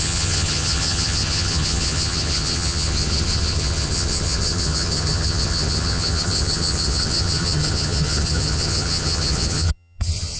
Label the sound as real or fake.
fake